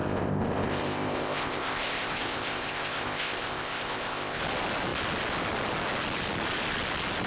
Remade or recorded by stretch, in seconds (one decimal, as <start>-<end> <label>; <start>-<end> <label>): 0.0-4.4 remade; 4.4-7.3 recorded